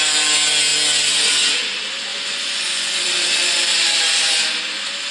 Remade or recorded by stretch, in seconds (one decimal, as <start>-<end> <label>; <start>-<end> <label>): 0.0-2.1 recorded; 2.1-4.0 remade; 4.0-5.1 recorded